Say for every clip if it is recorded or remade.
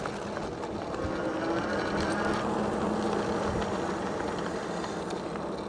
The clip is recorded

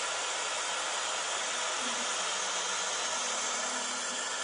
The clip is recorded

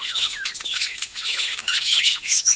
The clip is remade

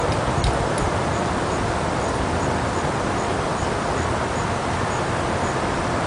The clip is recorded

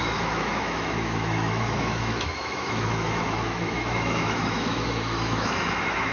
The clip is remade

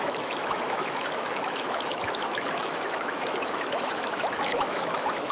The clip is remade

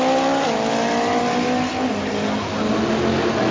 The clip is recorded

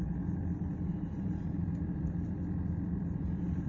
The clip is recorded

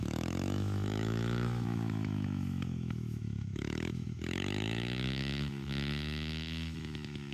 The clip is remade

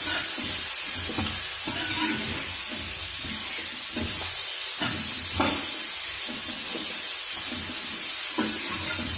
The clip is recorded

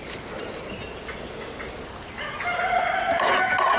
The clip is recorded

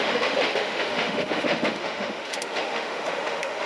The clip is remade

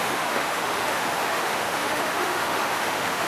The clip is remade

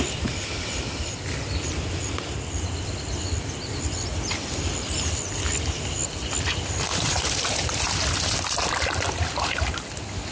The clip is recorded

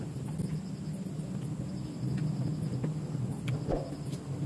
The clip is recorded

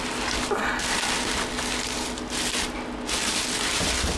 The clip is recorded